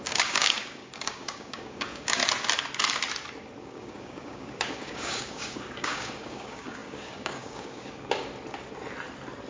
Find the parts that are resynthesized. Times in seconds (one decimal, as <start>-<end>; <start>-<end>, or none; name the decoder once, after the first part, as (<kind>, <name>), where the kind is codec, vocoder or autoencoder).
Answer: 0.0-2.2 (codec, DAC); 3.6-8.3